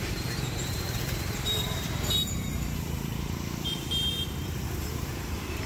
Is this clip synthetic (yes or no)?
yes